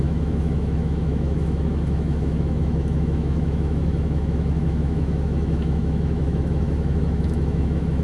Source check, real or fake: fake